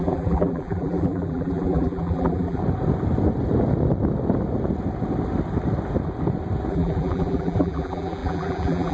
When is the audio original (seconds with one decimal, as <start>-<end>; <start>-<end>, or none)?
2.6-6.7